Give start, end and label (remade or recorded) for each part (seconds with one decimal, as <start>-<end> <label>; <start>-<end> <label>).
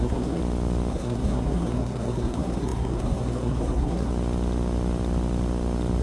0.0-0.4 remade; 0.4-0.9 recorded; 0.9-4.1 remade; 4.1-6.0 recorded